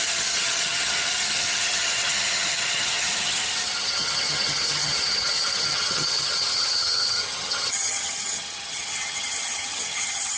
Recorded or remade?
remade